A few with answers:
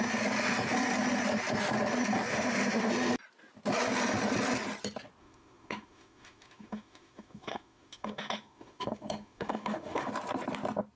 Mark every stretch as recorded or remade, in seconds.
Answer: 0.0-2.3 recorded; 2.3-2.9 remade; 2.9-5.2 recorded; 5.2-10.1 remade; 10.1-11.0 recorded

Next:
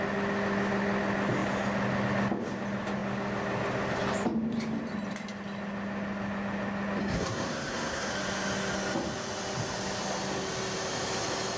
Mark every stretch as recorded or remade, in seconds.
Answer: 0.0-7.0 recorded; 7.0-8.1 remade; 8.1-11.6 recorded

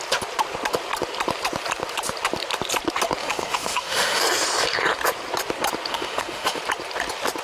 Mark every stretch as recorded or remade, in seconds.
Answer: 0.0-3.2 recorded; 3.2-4.2 remade; 4.2-5.9 recorded; 5.9-6.6 remade; 6.6-7.4 recorded